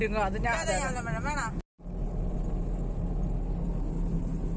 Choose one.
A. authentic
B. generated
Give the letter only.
A